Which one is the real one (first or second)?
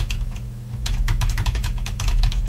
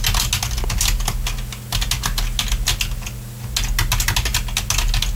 second